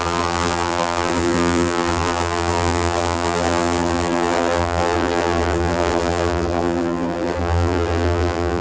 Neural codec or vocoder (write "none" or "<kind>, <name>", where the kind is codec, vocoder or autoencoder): vocoder, BigVGAN v2